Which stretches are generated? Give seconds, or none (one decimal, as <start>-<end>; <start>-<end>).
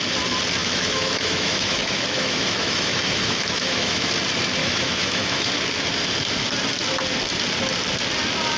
0.6-4.1; 4.6-5.5